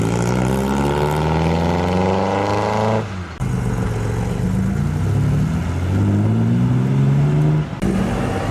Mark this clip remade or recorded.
recorded